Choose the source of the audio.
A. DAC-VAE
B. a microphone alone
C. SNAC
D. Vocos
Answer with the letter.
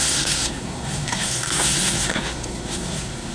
C